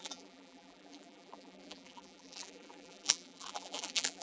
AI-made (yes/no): yes